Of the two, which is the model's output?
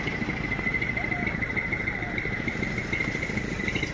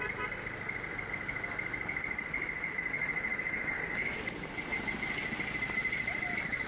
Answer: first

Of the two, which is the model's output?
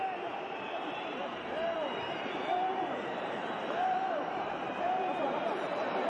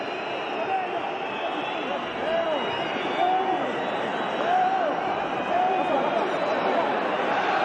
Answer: first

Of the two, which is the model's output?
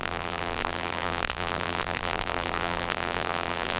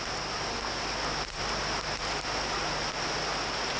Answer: first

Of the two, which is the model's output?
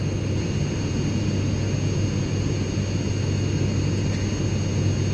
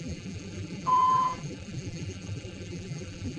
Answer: second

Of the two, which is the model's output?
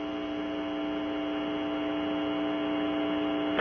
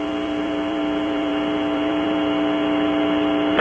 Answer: second